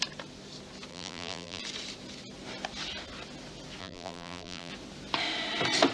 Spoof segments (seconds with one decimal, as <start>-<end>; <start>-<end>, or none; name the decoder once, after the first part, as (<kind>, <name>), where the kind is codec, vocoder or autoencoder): 0.9-1.6 (vocoder, BigVGAN v2); 3.8-4.7